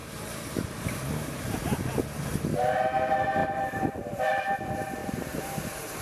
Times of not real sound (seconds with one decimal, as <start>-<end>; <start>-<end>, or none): 0.0-1.0; 3.4-4.4; 5.0-5.6